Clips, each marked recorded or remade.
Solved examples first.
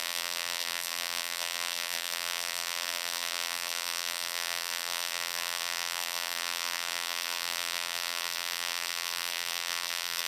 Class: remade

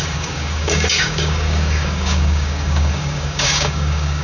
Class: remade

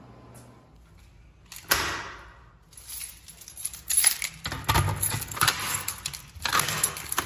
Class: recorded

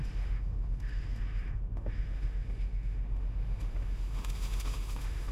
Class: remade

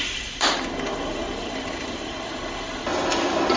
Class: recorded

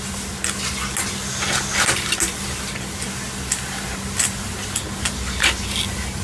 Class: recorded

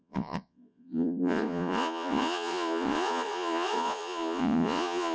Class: remade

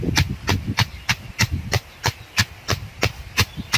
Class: recorded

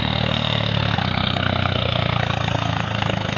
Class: remade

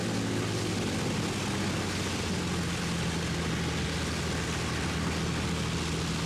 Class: recorded